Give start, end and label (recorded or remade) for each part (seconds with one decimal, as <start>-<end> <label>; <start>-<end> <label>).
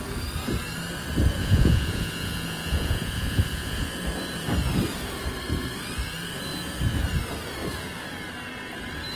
0.0-1.4 recorded; 1.4-3.9 remade; 3.9-9.2 recorded